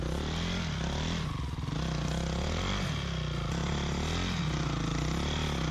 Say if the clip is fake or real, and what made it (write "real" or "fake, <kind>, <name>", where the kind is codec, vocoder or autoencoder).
real